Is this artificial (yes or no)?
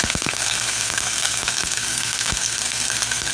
yes